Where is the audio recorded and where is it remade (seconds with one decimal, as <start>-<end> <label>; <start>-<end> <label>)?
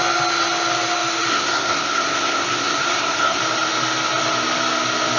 0.0-1.3 recorded; 1.3-3.4 remade; 3.4-5.2 recorded